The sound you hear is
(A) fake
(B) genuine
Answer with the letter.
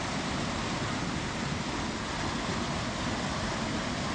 B